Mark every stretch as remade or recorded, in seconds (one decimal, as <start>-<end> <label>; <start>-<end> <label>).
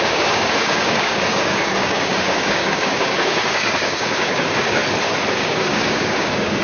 0.0-4.8 remade; 4.8-5.3 recorded; 5.3-6.6 remade